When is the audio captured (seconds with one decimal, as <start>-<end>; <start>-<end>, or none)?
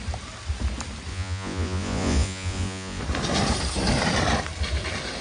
0.0-1.1; 3.0-5.2